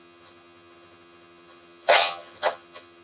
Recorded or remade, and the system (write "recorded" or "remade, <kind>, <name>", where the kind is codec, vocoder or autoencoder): remade, vocoder, HiFi-GAN